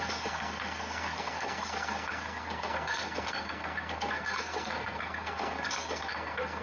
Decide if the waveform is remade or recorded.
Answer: remade